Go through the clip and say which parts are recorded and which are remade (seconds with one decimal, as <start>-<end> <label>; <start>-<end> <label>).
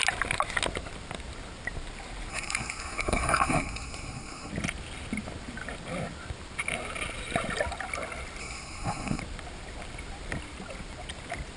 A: 0.0-2.3 recorded; 2.3-4.5 remade; 4.5-8.4 recorded; 8.4-9.2 remade; 9.2-11.6 recorded